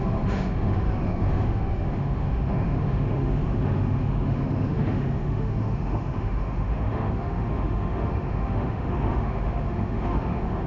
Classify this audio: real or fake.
fake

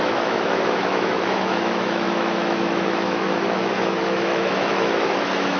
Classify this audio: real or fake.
fake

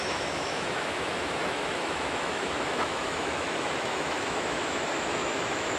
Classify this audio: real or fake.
fake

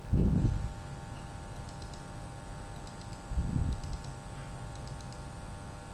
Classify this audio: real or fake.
real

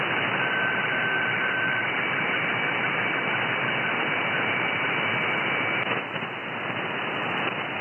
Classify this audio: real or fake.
real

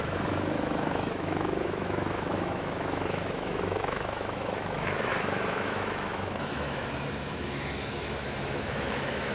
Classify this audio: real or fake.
fake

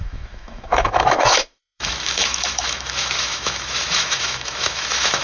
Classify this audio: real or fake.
fake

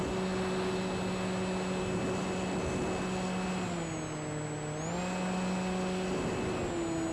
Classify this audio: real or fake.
real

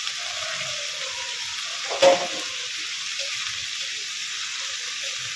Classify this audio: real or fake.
real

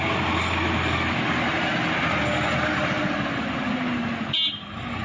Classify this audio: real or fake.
real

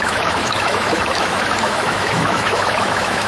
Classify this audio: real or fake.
fake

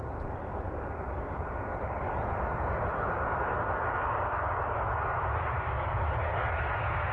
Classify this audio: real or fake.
real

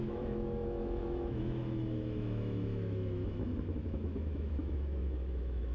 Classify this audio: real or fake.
fake